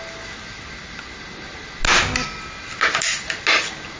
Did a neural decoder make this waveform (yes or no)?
no